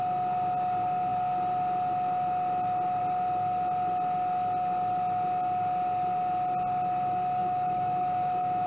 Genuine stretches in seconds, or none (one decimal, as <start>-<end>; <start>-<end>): 0.0-7.4